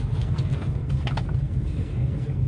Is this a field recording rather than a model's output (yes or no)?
no